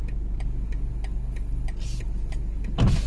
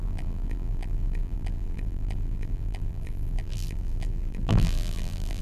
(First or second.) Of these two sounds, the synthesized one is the second